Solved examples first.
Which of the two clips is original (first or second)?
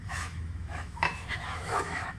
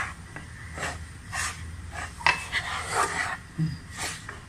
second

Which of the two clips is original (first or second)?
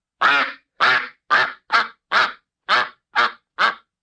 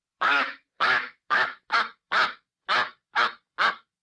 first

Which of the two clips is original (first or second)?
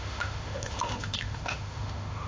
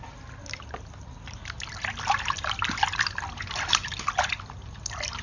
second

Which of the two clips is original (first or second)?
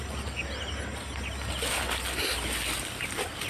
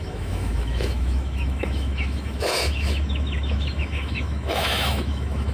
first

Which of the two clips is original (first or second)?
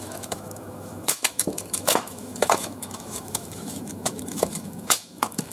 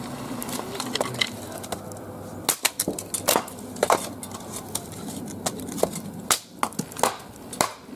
second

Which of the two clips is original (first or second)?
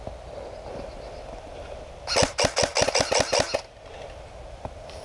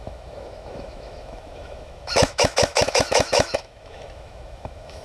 first